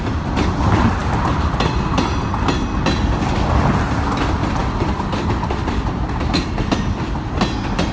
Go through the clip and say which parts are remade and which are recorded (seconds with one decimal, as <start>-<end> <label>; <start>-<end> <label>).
0.0-4.6 recorded; 4.6-7.2 remade; 7.2-7.9 recorded